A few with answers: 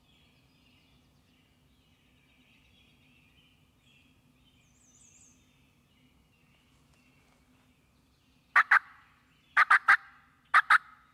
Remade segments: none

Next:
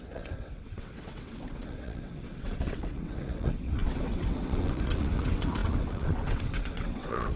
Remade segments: 0.0-7.4 (vocoder, WaveNeXt)

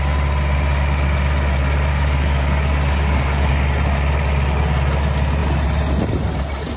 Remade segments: 1.9-3.5 (codec, DAC)